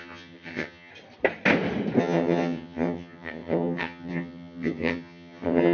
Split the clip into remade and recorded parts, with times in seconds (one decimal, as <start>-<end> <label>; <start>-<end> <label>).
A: 0.0-0.9 remade; 0.9-2.0 recorded; 2.0-5.7 remade